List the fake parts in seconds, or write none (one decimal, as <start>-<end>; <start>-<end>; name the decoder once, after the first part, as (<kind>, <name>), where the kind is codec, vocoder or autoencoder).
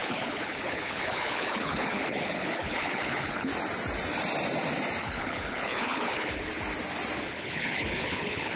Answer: 0.0-3.5 (codec, HILCodec); 5.0-6.5; 7.2-8.6